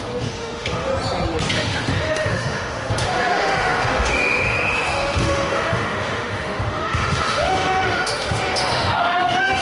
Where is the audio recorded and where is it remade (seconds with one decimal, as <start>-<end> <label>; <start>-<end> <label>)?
0.0-0.9 remade; 0.9-1.5 recorded; 1.5-9.6 remade